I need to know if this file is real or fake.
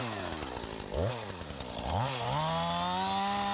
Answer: real